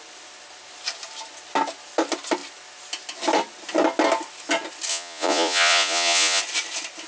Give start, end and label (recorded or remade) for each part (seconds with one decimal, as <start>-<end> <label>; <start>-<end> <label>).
0.0-4.9 recorded; 4.9-6.4 remade; 6.4-7.1 recorded

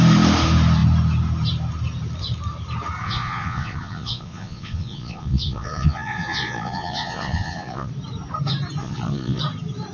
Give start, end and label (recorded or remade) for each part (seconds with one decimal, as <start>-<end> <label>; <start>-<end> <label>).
0.0-3.0 recorded; 3.0-7.9 remade; 7.9-8.8 recorded; 8.8-9.4 remade; 9.4-9.9 recorded